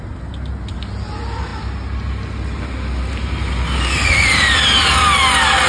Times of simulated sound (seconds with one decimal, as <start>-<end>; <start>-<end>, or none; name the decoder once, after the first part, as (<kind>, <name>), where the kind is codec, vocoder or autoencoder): none